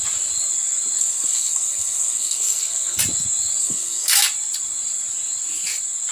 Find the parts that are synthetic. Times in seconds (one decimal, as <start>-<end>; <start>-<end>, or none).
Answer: 1.0-3.0; 3.6-4.2